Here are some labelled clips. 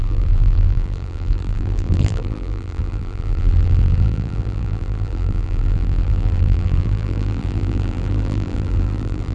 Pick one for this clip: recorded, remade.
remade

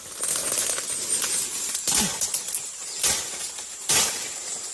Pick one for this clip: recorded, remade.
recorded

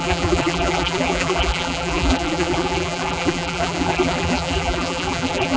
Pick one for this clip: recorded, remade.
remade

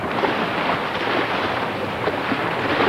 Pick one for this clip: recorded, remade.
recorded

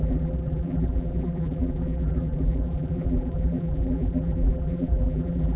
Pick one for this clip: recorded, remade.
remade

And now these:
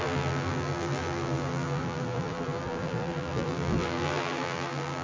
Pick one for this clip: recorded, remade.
remade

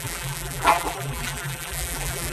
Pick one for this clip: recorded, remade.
remade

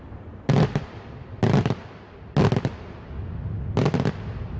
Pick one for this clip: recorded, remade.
recorded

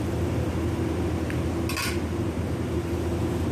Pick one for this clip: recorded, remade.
recorded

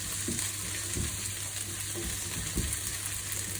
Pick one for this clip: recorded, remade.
recorded